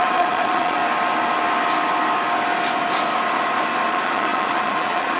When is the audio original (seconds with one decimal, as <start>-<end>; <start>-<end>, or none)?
0.8-3.9